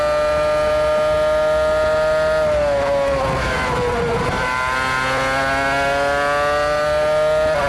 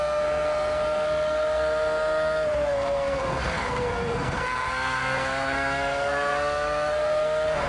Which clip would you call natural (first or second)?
first